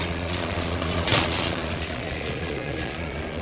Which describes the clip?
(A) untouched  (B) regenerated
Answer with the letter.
B